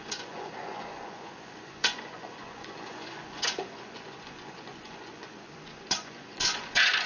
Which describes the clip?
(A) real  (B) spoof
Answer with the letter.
B